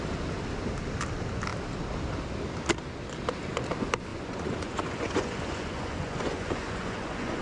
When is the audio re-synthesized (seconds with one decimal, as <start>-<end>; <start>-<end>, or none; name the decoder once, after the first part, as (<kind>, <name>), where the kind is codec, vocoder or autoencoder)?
4.1-7.4 (vocoder, Vocos)